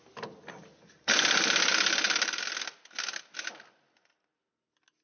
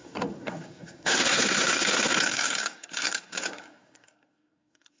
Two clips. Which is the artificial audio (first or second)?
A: second